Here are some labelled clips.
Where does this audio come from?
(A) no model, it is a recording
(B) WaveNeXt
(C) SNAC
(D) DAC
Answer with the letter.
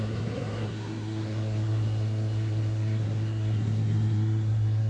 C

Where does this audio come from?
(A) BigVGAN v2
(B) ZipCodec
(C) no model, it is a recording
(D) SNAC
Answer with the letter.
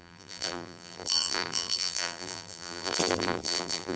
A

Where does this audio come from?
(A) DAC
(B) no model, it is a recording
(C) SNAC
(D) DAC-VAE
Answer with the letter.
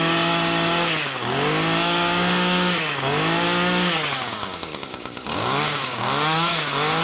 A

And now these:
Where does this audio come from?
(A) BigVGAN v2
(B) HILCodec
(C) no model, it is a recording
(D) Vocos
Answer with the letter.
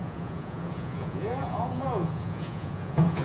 D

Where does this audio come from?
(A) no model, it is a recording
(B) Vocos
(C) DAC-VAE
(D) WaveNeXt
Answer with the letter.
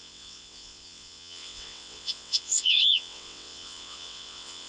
D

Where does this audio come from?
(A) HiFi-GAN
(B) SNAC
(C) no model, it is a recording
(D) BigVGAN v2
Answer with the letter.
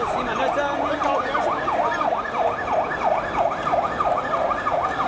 C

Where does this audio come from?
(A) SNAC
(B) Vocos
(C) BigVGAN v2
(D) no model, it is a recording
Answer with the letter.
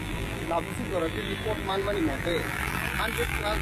C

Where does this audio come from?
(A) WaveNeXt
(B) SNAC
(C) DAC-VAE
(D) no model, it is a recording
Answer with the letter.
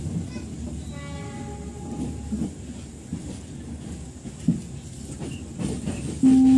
D